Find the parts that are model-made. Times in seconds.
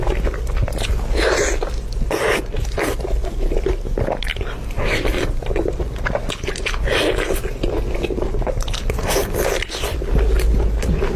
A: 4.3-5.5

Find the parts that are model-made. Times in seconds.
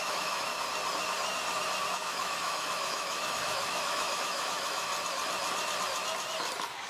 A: 0.0-0.5; 1.9-4.9